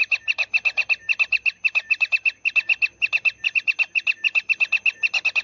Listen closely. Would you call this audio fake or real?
real